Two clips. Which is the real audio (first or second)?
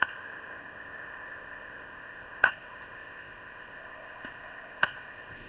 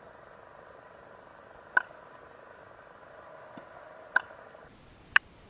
second